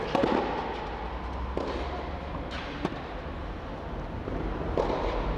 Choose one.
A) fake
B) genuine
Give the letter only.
B